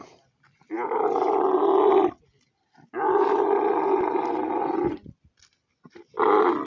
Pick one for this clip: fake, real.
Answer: real